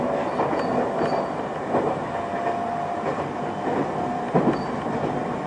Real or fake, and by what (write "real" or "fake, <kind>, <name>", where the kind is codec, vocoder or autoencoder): real